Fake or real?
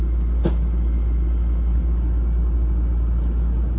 real